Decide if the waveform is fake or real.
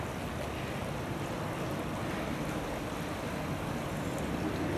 real